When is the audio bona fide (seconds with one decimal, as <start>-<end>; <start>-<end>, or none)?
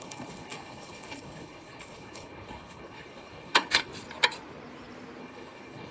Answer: 3.9-5.2